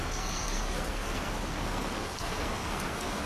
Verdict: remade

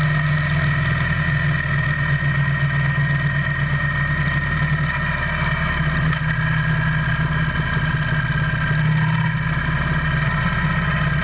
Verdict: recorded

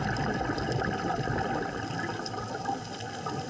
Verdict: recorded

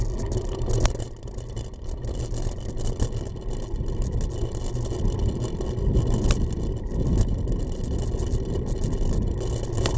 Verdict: recorded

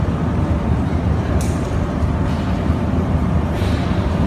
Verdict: remade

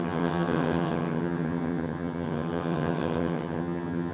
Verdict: remade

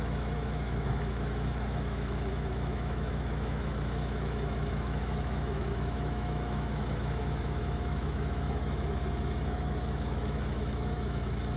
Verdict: remade